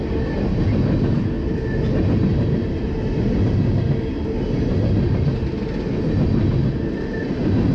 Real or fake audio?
real